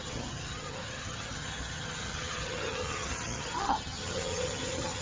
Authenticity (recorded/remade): remade